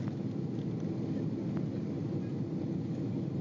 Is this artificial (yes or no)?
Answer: no